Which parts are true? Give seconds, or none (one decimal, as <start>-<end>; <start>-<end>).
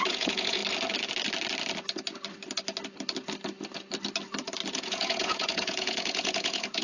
0.6-4.7